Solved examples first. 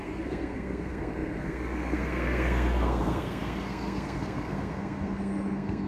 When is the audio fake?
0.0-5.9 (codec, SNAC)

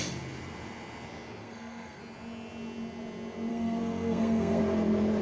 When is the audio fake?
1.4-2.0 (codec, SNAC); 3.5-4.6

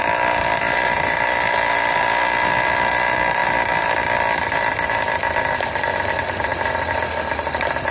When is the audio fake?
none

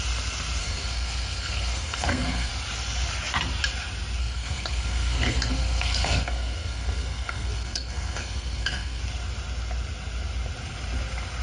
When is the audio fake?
0.6-2.5 (codec, SNAC); 4.2-9.0

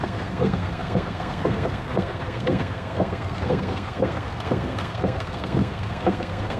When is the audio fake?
0.0-6.6 (codec, SNAC)

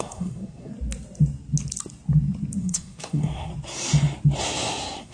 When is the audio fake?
0.0-0.7 (codec, SNAC); 2.6-3.5; 4.4-5.1